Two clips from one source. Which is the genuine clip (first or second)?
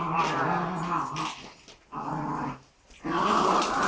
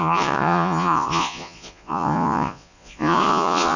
first